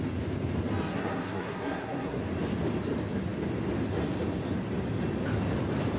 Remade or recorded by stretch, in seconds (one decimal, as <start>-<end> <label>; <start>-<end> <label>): 0.0-0.9 recorded; 0.9-2.2 remade; 2.2-6.0 recorded

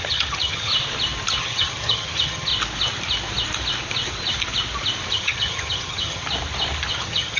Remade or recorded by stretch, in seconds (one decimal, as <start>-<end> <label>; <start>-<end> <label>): 0.0-0.7 remade; 0.7-1.4 recorded; 1.4-2.5 remade; 2.5-5.1 recorded; 5.1-6.2 remade; 6.2-6.9 recorded; 6.9-7.4 remade